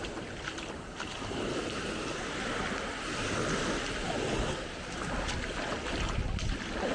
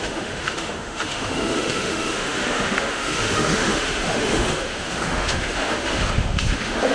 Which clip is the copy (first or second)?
second